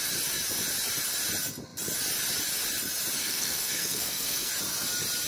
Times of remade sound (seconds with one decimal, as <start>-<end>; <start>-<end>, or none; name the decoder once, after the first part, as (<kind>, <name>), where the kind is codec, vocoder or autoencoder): 3.2-4.5 (codec, SNAC)